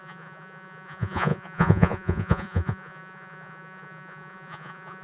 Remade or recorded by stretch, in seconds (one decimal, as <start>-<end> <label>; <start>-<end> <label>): 0.0-5.0 remade